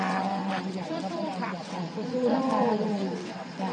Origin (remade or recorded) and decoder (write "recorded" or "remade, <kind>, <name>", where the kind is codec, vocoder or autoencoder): remade, vocoder, WaveNeXt